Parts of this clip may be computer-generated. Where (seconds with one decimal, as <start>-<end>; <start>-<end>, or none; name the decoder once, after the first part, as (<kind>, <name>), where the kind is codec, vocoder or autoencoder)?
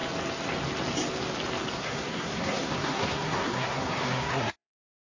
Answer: 1.8-5.0 (codec, SNAC)